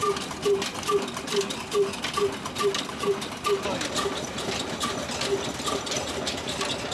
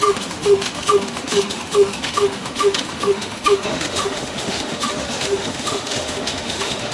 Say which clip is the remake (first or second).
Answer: second